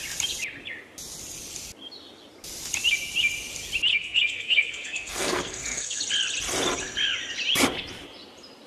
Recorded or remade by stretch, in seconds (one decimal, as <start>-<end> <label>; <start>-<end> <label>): 0.0-3.9 recorded; 3.9-6.0 remade; 6.0-8.7 recorded